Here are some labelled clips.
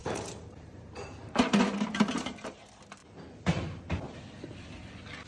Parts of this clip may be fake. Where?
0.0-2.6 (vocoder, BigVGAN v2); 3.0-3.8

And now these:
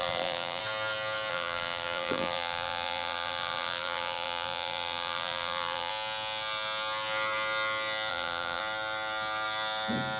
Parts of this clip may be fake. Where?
0.0-0.6 (vocoder, BigVGAN v2); 1.3-5.9; 8.1-8.6

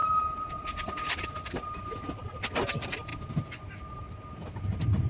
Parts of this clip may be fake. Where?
none

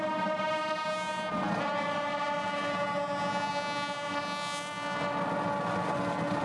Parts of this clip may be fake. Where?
none

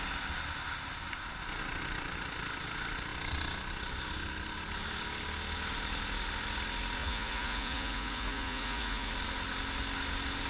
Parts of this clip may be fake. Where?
7.0-9.1 (vocoder, Vocos)

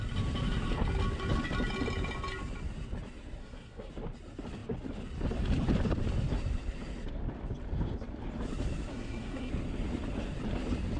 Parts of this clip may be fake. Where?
3.4-3.9 (codec, SNAC); 8.9-9.5

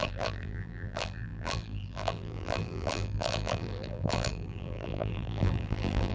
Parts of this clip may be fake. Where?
0.0-6.1 (vocoder, BigVGAN v2)